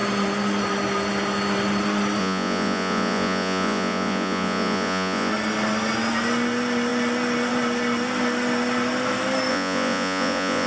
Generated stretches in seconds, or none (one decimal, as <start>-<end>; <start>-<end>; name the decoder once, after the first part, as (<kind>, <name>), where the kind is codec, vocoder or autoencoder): 2.2-5.3 (vocoder, Vocos); 9.5-10.7